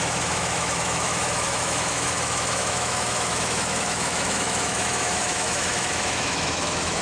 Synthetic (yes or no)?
yes